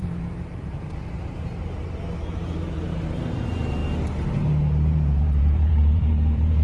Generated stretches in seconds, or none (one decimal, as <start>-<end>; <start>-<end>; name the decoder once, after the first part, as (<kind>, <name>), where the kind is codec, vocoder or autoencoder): 0.0-3.8 (vocoder, BigVGAN v2); 5.2-6.6